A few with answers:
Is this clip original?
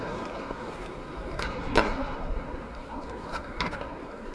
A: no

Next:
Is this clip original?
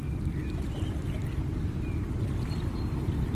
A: yes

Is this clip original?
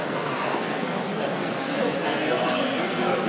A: no